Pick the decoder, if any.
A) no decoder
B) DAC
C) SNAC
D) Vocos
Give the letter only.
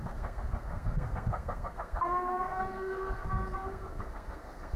C